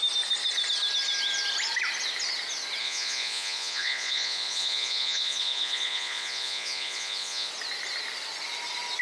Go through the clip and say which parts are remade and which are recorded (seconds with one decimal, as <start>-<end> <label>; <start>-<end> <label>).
0.0-2.8 recorded; 2.8-7.5 remade; 7.5-9.0 recorded